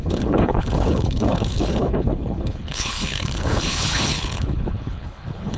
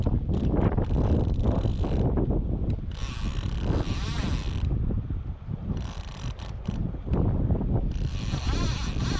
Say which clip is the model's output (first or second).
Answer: first